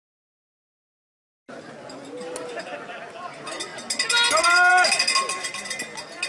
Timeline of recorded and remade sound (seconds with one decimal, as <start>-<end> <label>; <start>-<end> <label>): 0.0-6.3 recorded